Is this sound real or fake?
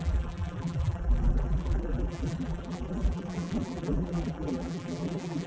fake